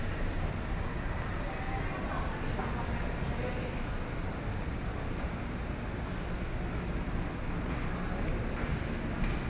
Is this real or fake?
real